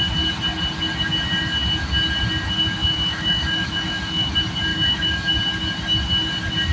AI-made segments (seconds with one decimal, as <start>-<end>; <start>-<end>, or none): 2.8-4.3; 4.7-5.3